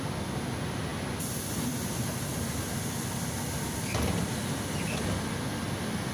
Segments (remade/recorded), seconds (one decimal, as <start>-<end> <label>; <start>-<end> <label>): 0.0-6.1 recorded